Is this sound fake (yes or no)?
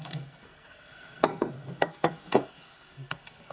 yes